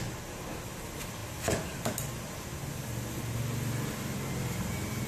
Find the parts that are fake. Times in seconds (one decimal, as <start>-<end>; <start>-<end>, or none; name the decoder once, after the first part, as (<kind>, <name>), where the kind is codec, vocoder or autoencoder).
none